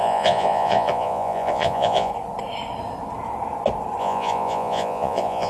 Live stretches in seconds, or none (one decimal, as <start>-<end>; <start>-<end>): 2.1-4.0